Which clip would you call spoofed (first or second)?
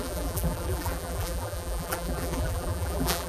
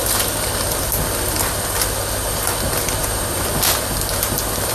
first